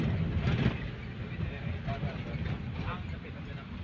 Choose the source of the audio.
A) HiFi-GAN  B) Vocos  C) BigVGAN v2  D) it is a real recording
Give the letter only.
D